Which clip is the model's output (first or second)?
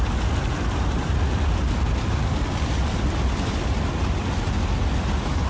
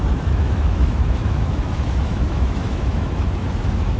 second